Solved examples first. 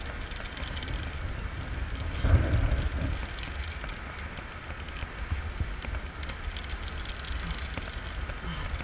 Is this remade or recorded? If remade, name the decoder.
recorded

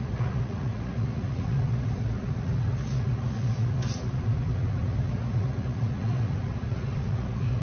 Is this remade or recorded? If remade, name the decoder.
remade, vocoder, Vocos